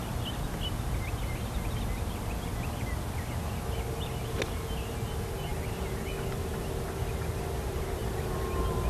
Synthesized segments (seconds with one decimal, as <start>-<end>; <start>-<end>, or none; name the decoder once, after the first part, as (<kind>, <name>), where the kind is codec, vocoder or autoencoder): none